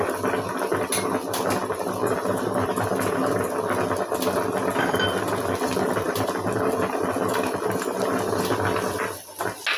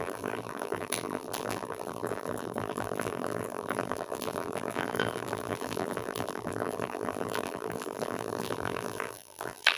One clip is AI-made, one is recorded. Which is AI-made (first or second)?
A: second